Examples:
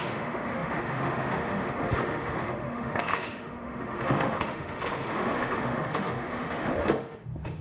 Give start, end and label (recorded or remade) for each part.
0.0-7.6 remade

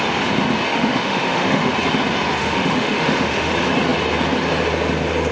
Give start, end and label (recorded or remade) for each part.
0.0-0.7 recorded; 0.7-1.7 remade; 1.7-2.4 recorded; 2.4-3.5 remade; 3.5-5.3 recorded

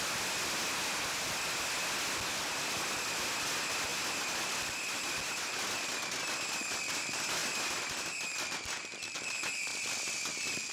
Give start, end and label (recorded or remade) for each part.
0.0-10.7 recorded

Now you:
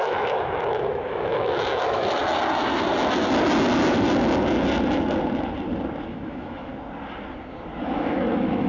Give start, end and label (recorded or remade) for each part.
0.0-2.2 remade; 2.2-6.1 recorded; 6.1-6.7 remade; 6.7-7.8 recorded; 7.8-8.7 remade

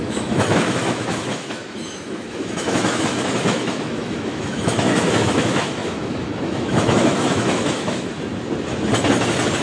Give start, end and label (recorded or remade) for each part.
0.0-8.3 remade; 8.3-9.6 recorded

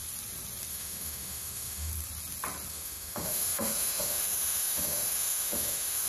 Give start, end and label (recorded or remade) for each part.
0.0-0.7 recorded; 0.7-1.9 remade; 1.9-2.7 recorded; 2.7-6.1 remade